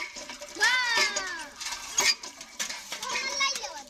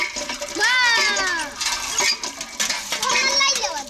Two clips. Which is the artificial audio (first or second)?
first